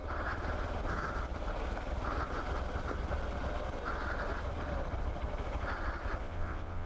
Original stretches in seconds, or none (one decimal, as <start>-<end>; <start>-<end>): 0.0-6.2